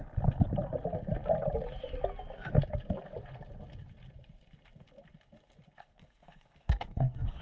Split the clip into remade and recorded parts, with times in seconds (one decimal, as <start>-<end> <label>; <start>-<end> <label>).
0.0-5.8 recorded; 5.8-7.4 remade

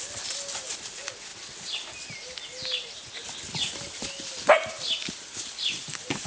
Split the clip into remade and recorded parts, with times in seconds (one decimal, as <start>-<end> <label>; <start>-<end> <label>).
0.0-6.3 recorded

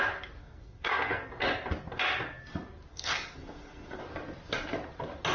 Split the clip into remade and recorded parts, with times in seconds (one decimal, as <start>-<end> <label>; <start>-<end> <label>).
0.0-0.4 recorded; 0.4-1.3 remade; 1.3-2.9 recorded; 2.9-4.0 remade; 4.0-5.3 recorded

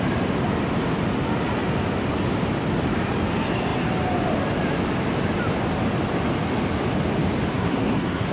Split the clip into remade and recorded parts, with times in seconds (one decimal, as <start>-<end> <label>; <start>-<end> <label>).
0.0-7.5 recorded; 7.5-8.3 remade

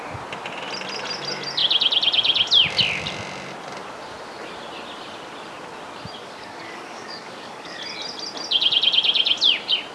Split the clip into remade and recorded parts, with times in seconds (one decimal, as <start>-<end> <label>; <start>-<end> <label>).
0.0-6.2 recorded; 6.2-7.8 remade; 7.8-9.9 recorded

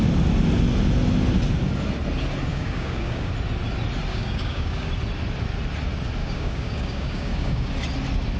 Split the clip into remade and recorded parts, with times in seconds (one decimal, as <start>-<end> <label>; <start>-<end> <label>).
0.0-2.5 recorded; 2.5-3.3 remade; 3.3-4.1 recorded; 4.1-4.9 remade; 4.9-6.2 recorded; 6.2-7.7 remade; 7.7-8.4 recorded

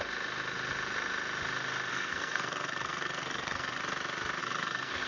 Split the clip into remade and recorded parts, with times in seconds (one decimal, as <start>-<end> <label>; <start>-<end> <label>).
0.0-1.9 recorded; 1.9-3.8 remade; 3.8-4.4 recorded; 4.4-5.1 remade